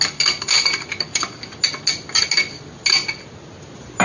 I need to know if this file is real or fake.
real